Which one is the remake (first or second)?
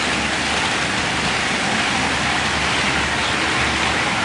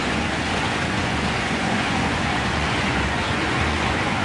second